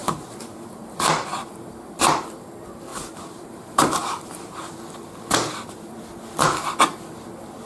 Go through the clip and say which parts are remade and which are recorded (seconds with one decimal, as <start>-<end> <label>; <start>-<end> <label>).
0.0-2.1 remade; 2.1-2.9 recorded; 2.9-4.7 remade; 4.7-7.7 recorded